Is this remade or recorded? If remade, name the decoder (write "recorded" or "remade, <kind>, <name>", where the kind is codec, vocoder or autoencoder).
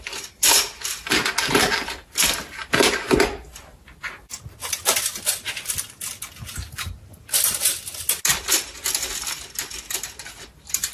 recorded